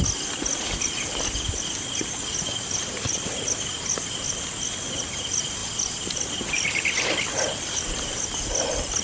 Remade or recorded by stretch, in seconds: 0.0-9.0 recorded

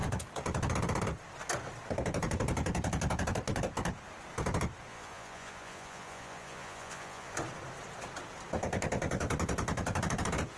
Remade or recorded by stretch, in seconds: 0.0-4.9 recorded; 4.9-7.3 remade; 7.3-10.6 recorded

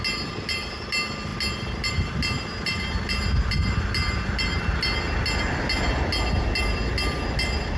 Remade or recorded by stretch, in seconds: 0.0-7.8 recorded